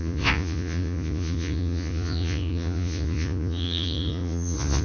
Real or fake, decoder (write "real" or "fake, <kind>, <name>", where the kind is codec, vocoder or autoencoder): fake, vocoder, Vocos